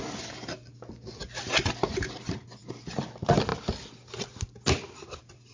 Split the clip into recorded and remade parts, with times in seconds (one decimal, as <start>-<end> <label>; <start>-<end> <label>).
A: 0.0-5.5 recorded